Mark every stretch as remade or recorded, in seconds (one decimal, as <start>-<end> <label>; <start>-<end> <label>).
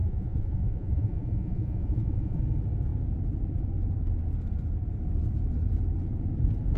0.0-2.4 remade; 2.4-6.8 recorded